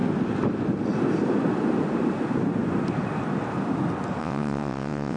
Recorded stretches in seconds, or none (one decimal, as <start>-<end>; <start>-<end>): 0.0-4.2